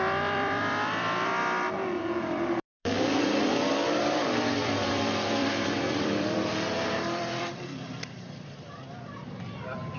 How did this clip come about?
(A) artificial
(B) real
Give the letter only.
A